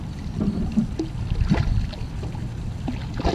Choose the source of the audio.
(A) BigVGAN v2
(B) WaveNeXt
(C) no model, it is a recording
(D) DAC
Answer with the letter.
C